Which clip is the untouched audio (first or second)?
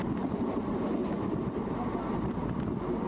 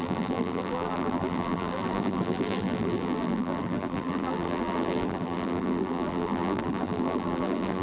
first